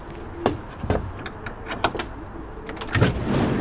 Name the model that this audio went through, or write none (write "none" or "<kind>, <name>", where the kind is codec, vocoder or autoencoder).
none